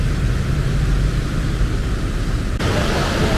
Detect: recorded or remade remade